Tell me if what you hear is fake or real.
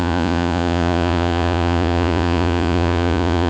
fake